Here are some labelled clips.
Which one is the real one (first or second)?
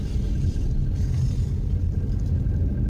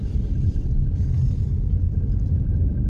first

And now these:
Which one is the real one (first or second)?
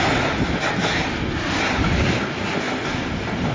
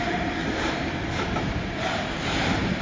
first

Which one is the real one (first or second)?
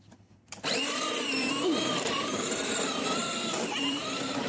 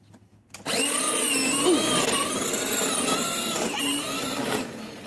second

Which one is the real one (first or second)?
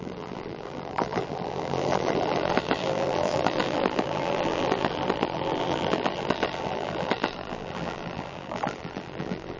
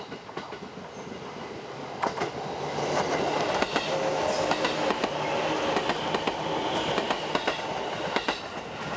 second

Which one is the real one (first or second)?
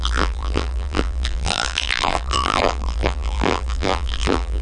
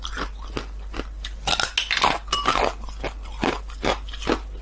second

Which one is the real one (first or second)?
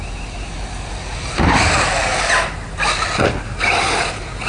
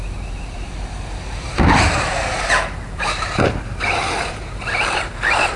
first